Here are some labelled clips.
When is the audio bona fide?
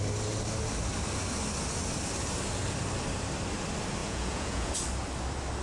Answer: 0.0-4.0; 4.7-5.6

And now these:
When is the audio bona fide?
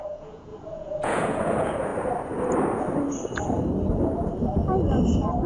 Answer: 1.9-5.5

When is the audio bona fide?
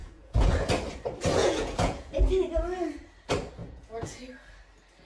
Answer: 0.5-1.4; 2.1-3.6; 4.2-5.1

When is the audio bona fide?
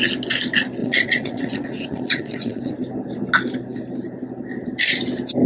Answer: 0.0-0.8; 2.7-5.5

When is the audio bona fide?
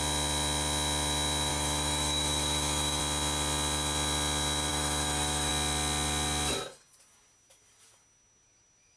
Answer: 0.0-1.5; 3.0-4.7; 5.5-9.0